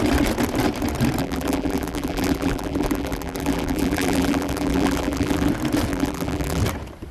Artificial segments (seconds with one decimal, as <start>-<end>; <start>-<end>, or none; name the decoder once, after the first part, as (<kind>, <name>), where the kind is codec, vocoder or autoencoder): 1.2-5.5 (vocoder, BigVGAN v2); 5.9-6.6